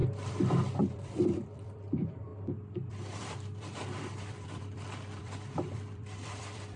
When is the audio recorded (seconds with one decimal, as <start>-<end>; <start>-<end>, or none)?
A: 2.3-2.9